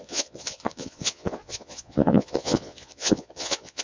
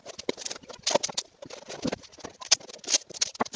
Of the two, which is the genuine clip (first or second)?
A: second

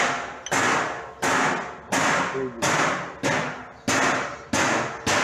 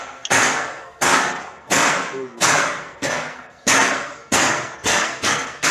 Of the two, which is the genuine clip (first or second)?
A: first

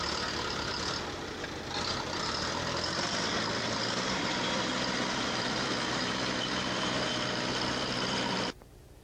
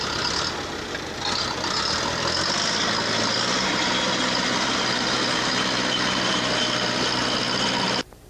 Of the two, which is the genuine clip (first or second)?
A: second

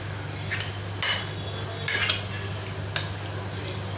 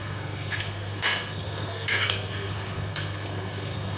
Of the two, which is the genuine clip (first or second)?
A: first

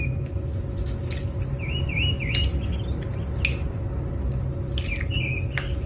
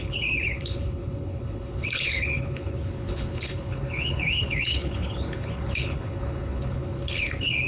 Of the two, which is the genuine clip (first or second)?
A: first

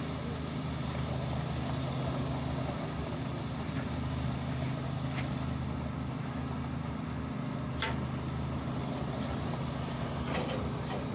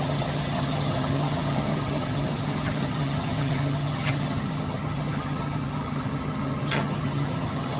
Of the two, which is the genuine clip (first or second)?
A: first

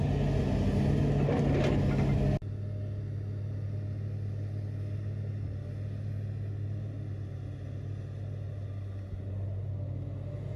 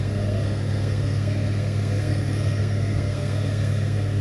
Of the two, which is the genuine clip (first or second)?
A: first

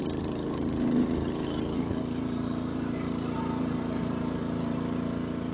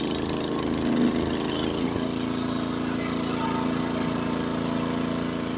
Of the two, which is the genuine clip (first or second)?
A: second